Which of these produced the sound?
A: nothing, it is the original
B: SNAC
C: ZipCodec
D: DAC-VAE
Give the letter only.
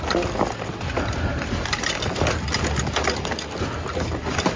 A